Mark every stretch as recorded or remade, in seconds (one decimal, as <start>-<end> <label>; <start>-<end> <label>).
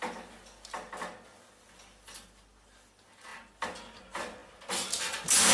0.0-5.5 recorded